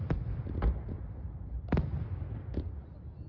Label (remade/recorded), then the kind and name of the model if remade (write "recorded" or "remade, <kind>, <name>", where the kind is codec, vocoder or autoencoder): recorded